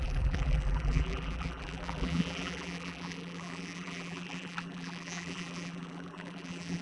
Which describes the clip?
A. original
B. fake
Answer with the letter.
B